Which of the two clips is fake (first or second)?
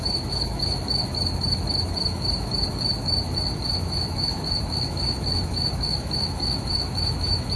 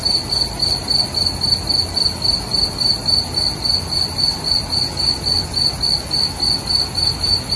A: first